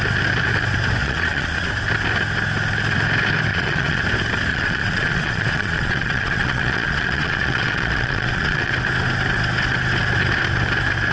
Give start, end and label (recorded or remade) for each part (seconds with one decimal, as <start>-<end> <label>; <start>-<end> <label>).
0.0-1.0 recorded; 1.0-1.7 remade; 1.7-3.5 recorded; 3.5-4.0 remade; 4.0-4.5 recorded; 4.5-8.7 remade; 8.7-11.1 recorded